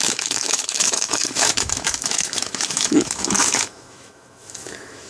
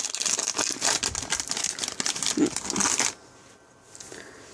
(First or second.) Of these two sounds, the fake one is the first